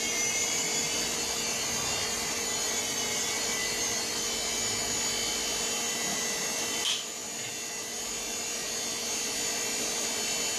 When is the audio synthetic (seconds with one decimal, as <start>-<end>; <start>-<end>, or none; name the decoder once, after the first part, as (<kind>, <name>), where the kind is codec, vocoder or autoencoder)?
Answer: none